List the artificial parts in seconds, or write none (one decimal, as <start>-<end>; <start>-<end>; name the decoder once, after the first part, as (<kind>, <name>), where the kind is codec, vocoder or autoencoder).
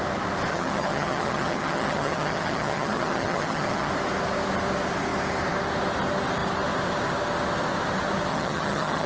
0.5-3.9 (vocoder, HiFi-GAN); 8.3-9.1